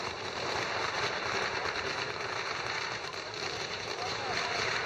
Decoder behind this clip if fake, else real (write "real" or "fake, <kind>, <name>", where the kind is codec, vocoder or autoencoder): fake, vocoder, BigVGAN v2